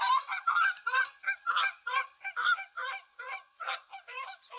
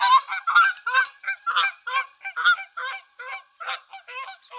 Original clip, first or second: second